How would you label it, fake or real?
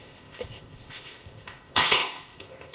fake